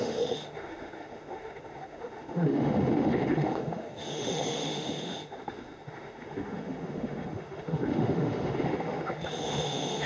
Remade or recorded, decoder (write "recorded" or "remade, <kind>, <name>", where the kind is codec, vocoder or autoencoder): remade, autoencoder, DAC-VAE